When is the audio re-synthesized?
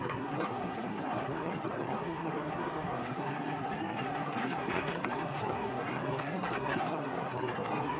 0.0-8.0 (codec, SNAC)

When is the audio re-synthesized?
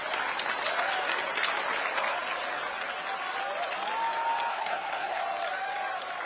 4.5-5.2 (codec, SNAC)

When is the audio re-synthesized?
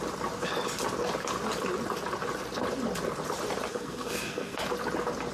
3.7-4.6 (codec, SNAC)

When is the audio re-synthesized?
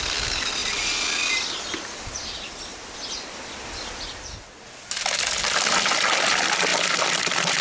none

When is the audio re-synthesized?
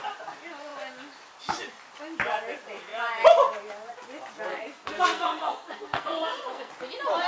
4.5-6.7 (codec, SNAC)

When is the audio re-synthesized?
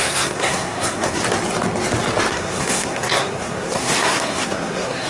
0.0-1.2 (codec, SNAC); 2.3-5.1